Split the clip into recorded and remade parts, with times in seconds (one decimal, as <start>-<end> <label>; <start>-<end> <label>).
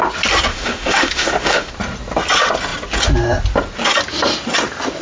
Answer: 0.0-0.5 recorded; 0.5-1.7 remade; 1.7-5.0 recorded